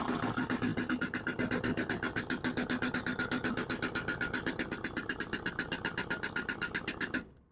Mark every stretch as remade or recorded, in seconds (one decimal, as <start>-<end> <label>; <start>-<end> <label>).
0.0-7.5 recorded